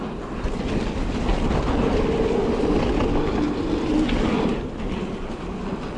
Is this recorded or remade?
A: recorded